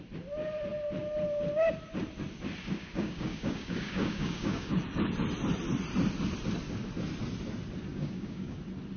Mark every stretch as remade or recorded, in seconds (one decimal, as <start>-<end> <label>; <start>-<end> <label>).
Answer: 0.0-2.8 recorded; 2.8-5.0 remade; 5.0-7.9 recorded; 7.9-8.6 remade; 8.6-9.0 recorded